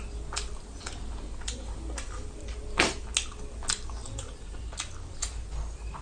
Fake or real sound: real